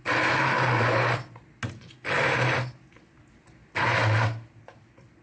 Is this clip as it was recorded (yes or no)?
yes